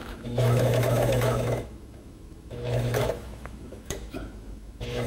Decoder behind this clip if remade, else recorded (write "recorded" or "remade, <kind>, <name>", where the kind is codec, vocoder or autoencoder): remade, autoencoder, DAC-VAE